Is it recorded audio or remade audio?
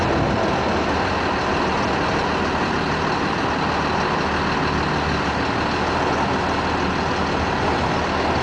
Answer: recorded